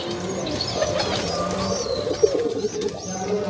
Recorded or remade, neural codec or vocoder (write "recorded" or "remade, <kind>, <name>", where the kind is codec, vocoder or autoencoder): recorded